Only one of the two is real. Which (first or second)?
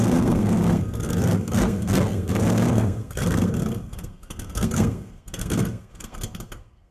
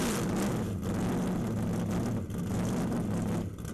second